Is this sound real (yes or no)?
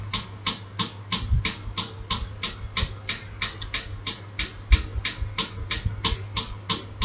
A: yes